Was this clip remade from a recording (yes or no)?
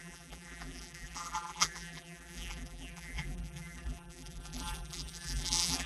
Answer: yes